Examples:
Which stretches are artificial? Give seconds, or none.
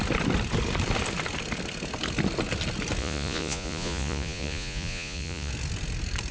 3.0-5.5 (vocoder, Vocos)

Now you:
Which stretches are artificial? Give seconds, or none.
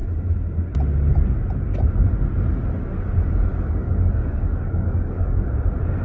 3.5-5.5 (codec, DAC)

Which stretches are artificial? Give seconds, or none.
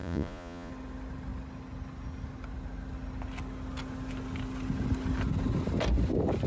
0.0-0.7 (vocoder, Vocos)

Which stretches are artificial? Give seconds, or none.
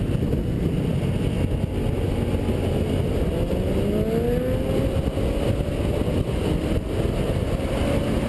none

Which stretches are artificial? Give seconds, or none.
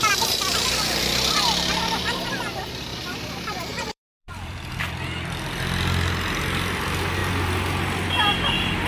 2.9-4.8 (vocoder, BigVGAN v2)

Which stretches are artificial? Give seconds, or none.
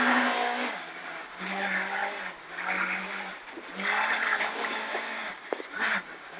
0.0-2.0 (codec, DAC); 4.4-6.4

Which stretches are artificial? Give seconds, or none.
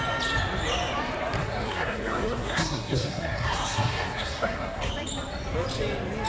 1.4-4.9 (codec, SNAC)